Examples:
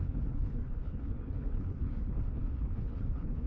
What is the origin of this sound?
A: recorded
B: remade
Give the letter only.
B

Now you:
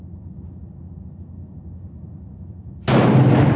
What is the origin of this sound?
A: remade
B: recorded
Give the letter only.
B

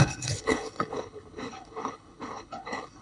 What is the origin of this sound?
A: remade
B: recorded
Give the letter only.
A